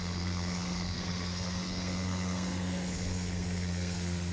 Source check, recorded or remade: remade